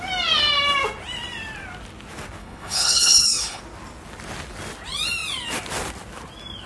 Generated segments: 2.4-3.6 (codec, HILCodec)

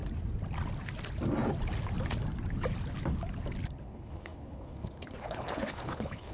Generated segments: 3.8-6.3 (codec, HILCodec)

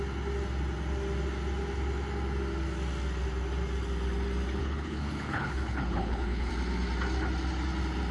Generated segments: 4.6-6.5 (codec, HILCodec)

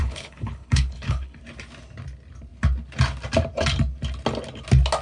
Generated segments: 0.0-1.4 (codec, HILCodec)